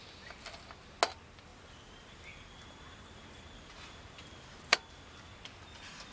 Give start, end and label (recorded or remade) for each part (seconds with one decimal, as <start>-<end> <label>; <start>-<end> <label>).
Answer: 0.0-1.5 recorded; 1.5-5.2 remade; 5.2-6.1 recorded